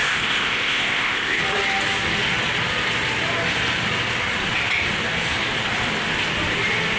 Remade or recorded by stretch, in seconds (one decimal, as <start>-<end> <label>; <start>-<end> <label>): 0.0-1.4 remade; 1.4-7.0 recorded